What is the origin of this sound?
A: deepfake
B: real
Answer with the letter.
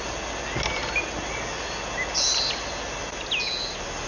B